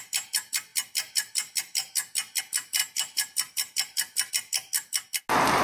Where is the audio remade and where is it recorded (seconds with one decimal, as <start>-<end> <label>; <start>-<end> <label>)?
0.0-2.8 recorded; 2.8-4.3 remade; 4.3-5.6 recorded